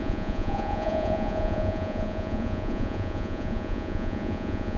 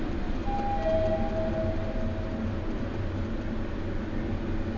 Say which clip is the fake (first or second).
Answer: first